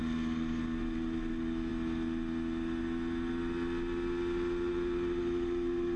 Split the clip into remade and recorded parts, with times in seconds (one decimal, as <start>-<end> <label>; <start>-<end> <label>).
0.0-6.0 recorded